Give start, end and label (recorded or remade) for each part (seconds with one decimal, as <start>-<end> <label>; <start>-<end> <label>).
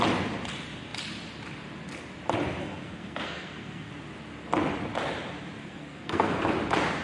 0.0-2.6 recorded; 2.6-3.9 remade; 3.9-5.6 recorded; 5.6-6.4 remade; 6.4-7.0 recorded